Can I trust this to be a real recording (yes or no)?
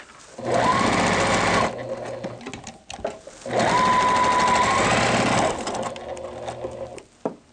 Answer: yes